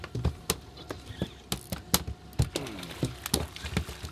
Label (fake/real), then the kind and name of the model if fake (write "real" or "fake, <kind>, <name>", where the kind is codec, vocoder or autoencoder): real